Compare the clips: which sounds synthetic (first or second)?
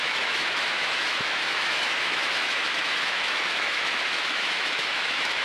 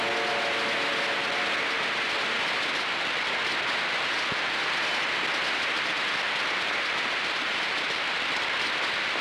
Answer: first